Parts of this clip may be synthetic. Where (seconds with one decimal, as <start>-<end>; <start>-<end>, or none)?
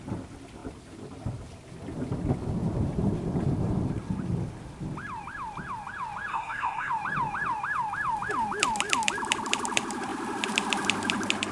6.3-6.9